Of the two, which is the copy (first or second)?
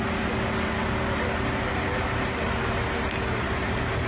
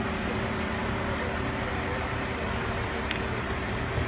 second